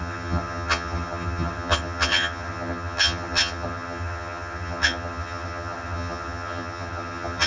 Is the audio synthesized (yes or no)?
yes